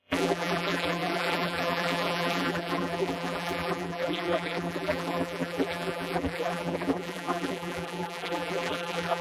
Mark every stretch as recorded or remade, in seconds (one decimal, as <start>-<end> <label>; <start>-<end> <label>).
0.0-9.2 remade